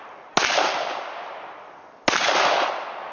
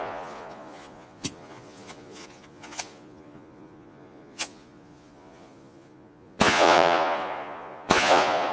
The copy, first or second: second